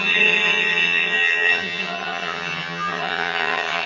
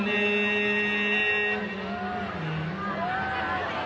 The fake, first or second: first